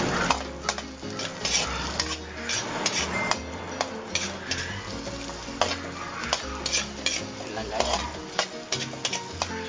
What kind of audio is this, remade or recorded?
recorded